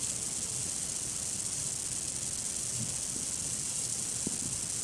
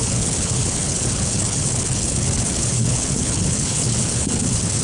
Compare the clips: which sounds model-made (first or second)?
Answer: second